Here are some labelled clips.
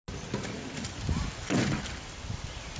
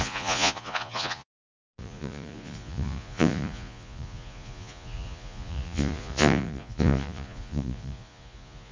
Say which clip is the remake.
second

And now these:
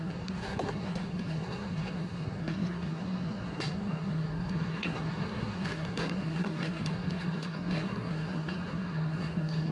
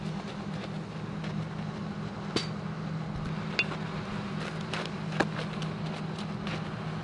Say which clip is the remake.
first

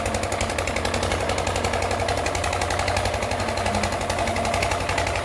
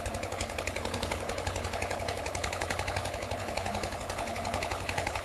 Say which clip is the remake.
second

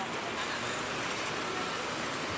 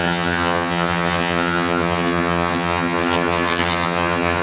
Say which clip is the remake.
second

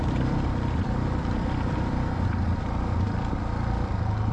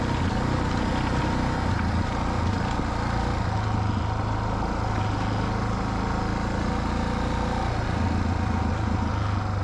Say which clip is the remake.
first